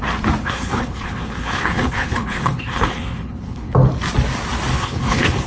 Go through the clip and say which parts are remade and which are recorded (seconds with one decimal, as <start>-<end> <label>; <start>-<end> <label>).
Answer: 0.0-0.4 recorded; 0.4-3.7 remade; 3.7-4.7 recorded; 4.7-5.5 remade